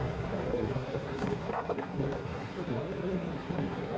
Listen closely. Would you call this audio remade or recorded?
remade